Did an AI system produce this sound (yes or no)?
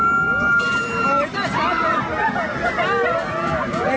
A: no